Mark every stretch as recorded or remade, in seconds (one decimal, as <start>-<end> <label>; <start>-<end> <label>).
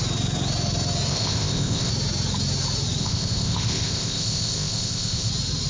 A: 0.0-1.1 recorded; 1.1-1.9 remade; 1.9-3.0 recorded; 3.0-5.3 remade; 5.3-5.7 recorded